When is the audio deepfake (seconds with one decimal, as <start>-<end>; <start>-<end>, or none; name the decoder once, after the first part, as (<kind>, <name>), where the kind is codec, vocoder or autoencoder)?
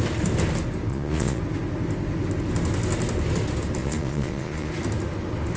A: 0.9-1.4 (vocoder, Vocos); 3.8-4.7